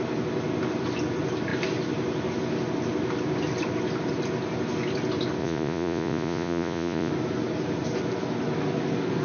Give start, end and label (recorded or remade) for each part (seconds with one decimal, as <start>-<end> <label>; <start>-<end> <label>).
0.0-5.4 recorded; 5.4-7.1 remade; 7.1-9.2 recorded